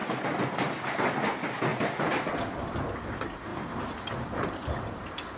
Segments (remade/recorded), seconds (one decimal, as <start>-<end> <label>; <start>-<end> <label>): 0.0-1.7 recorded; 1.7-2.3 remade; 2.3-3.5 recorded; 3.5-5.4 remade